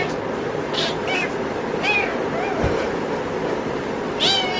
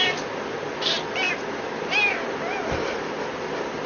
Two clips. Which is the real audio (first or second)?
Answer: second